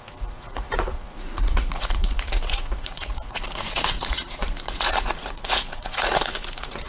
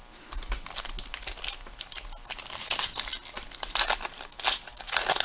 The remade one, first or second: first